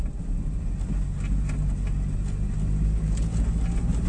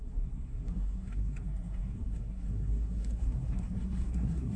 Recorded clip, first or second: first